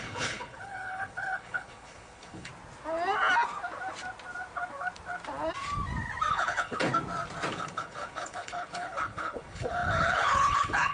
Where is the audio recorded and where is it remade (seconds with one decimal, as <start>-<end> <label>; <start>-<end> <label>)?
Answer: 0.0-2.5 remade; 2.5-6.3 recorded; 6.3-6.9 remade; 6.9-7.5 recorded; 7.5-10.9 remade